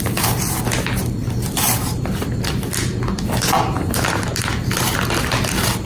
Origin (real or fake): real